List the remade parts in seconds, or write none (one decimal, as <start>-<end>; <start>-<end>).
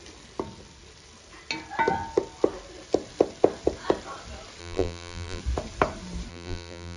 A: 4.6-5.4; 6.3-7.0